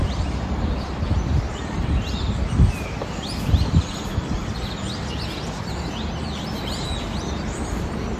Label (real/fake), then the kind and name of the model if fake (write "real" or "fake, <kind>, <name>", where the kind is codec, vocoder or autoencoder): fake, vocoder, BigVGAN v2